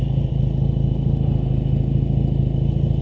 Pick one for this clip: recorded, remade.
recorded